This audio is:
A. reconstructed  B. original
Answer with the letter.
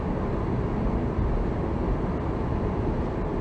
B